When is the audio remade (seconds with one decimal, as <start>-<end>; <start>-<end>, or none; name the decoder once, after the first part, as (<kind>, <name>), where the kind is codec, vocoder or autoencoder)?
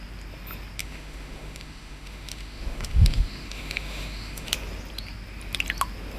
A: 0.8-4.5 (autoencoder, DAC-VAE)